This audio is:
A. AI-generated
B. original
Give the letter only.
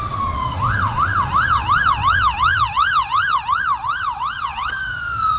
A